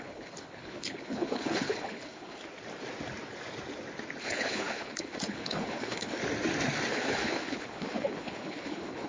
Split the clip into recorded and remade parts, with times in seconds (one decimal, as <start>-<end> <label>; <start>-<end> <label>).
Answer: 0.0-2.4 remade; 2.4-4.2 recorded; 4.2-6.2 remade; 6.2-6.9 recorded; 6.9-9.1 remade